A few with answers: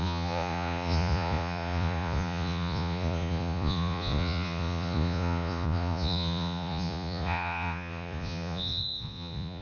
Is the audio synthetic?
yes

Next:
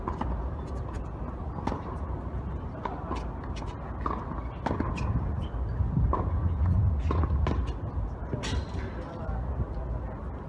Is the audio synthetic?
no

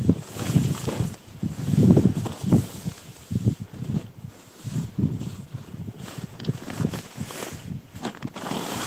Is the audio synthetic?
yes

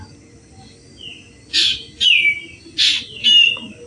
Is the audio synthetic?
no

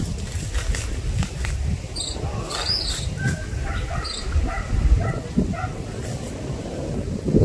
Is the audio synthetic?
no